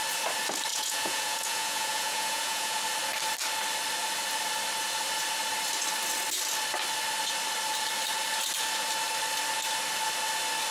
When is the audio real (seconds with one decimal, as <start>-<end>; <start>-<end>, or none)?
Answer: 0.0-0.7; 2.8-10.7